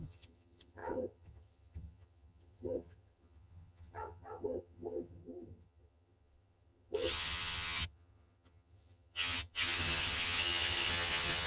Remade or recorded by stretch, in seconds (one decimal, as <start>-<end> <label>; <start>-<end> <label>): 0.0-11.5 remade